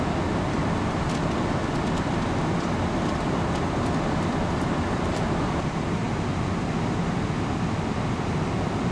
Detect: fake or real real